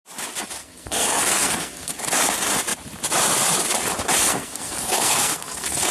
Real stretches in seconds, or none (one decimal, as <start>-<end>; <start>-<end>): 0.0-0.6; 2.0-4.3